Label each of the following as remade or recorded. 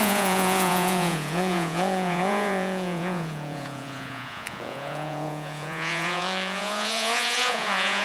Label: remade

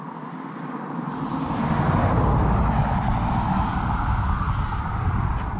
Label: recorded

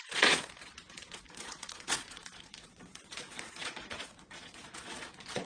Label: remade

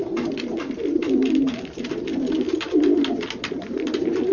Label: recorded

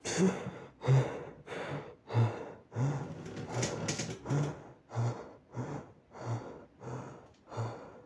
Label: recorded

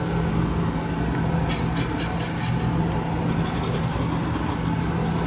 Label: recorded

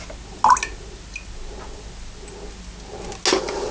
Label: recorded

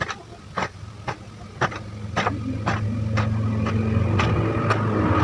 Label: recorded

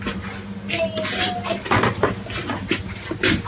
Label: recorded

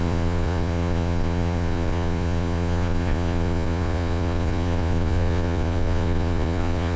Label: remade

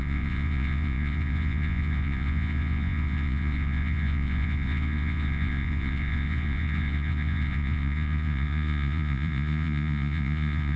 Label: remade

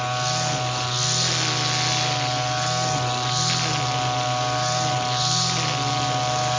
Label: recorded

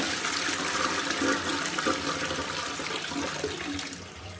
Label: recorded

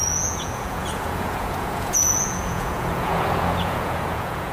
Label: remade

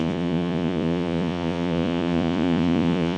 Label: remade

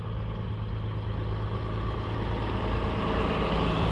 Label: recorded